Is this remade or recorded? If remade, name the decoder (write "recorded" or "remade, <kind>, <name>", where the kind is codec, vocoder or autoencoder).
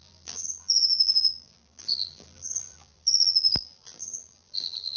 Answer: remade, vocoder, BigVGAN v2